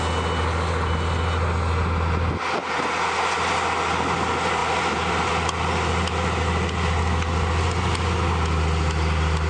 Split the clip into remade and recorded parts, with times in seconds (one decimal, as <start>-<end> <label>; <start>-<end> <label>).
0.0-4.6 recorded; 4.6-5.3 remade; 5.3-9.5 recorded